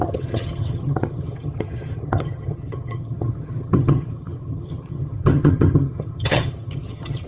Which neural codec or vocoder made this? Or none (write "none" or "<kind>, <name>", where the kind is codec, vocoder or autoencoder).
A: vocoder, HiFi-GAN